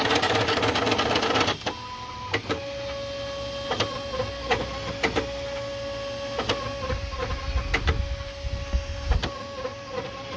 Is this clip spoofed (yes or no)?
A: no